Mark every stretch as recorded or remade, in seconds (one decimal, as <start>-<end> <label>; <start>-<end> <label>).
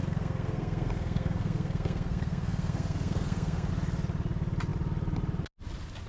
0.0-3.7 remade; 3.7-6.1 recorded